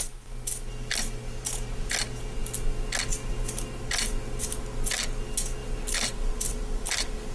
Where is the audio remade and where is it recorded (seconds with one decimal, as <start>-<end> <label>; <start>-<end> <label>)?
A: 0.0-7.3 recorded